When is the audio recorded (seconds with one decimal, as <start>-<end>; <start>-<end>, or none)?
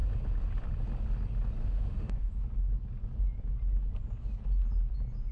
0.0-1.6; 2.3-5.3